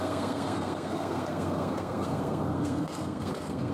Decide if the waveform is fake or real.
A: fake